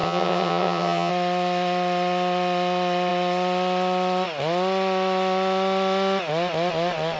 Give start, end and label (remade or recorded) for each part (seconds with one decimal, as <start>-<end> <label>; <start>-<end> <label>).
0.0-1.1 remade; 1.1-7.2 recorded